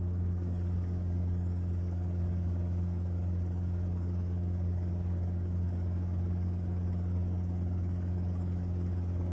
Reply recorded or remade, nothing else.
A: remade